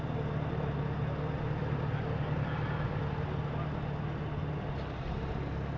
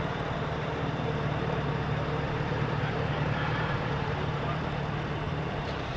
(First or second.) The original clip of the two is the first